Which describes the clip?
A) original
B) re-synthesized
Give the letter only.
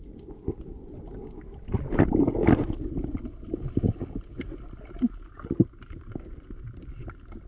A